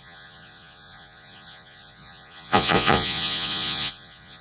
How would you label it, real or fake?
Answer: fake